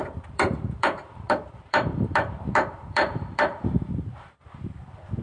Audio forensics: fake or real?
fake